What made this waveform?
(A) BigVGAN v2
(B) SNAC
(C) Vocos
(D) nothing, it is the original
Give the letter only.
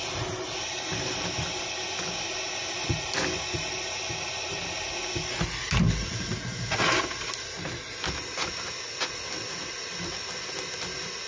D